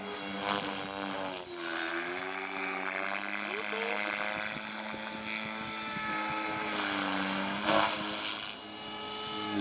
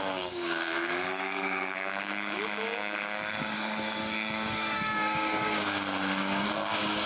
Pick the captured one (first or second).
first